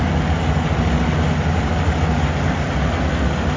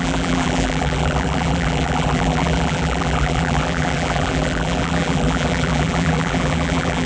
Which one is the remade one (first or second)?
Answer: second